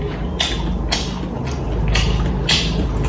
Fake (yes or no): no